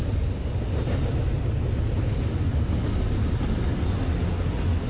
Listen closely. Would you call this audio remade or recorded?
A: recorded